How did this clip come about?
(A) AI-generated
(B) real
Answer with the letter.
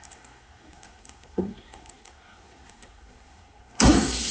A